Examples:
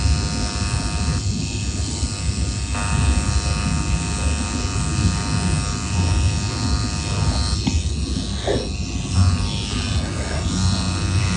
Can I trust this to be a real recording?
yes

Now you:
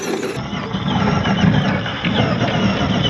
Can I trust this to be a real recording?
yes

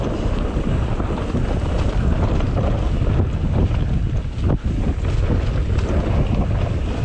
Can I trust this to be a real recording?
yes